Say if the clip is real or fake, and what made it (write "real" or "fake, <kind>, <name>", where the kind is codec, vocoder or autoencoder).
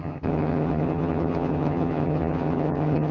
fake, vocoder, HiFi-GAN